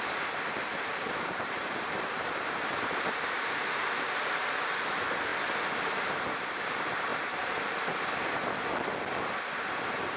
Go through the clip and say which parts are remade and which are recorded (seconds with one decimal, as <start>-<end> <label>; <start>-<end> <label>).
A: 0.0-0.7 recorded; 0.7-4.4 remade; 4.4-7.1 recorded; 7.1-7.9 remade; 7.9-10.2 recorded